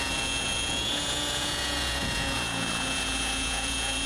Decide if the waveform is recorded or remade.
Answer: remade